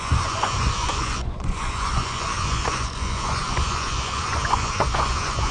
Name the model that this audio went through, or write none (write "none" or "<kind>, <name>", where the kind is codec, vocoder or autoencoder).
vocoder, Vocos